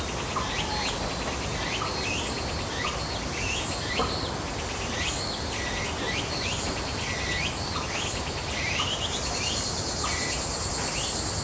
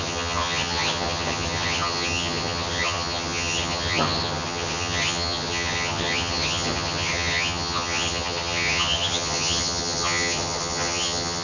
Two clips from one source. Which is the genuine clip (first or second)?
first